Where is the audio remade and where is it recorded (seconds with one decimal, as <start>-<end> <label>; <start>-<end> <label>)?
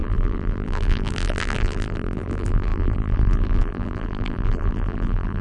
0.0-5.4 remade